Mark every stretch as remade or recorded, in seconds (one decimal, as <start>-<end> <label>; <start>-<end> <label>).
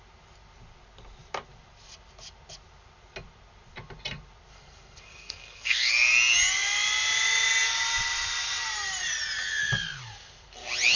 0.0-4.5 recorded; 4.5-5.9 remade; 5.9-11.0 recorded